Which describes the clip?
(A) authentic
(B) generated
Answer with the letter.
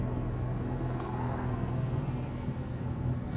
B